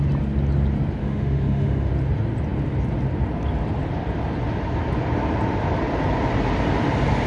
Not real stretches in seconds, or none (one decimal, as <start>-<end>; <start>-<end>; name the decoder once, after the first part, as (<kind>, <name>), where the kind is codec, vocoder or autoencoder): 1.0-1.9 (autoencoder, DAC-VAE)